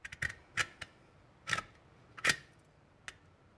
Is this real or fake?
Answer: real